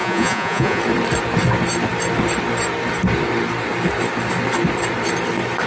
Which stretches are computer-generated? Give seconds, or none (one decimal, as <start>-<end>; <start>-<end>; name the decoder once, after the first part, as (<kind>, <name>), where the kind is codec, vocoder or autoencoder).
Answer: 0.0-0.8 (vocoder, Vocos)